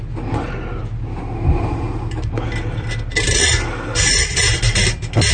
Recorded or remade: recorded